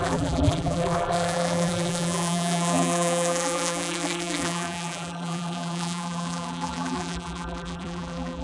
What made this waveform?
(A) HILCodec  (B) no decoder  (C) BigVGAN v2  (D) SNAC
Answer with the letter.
C